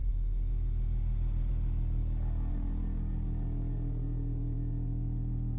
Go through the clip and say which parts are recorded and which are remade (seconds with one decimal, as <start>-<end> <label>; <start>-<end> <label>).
0.0-2.0 remade; 2.0-2.5 recorded; 2.5-5.6 remade